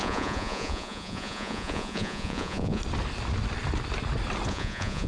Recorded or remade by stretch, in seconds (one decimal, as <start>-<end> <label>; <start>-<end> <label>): 0.0-2.8 remade; 2.8-4.5 recorded; 4.5-5.1 remade